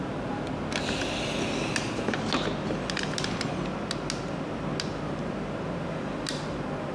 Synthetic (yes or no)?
no